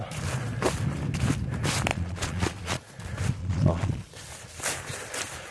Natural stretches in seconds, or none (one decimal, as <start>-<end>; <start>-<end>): 0.0-1.9; 3.0-3.4; 4.1-5.5